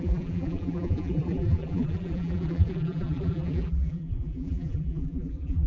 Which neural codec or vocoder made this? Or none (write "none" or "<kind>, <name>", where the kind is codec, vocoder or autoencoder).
vocoder, BigVGAN v2